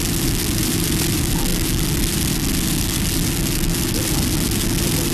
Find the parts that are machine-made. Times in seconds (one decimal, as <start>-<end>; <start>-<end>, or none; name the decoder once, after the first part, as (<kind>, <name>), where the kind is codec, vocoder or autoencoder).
none